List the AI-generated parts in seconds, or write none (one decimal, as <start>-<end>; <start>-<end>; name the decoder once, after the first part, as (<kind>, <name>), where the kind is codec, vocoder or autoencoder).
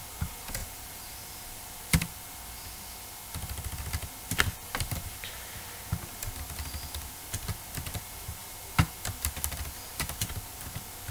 0.6-2.2 (vocoder, BigVGAN v2)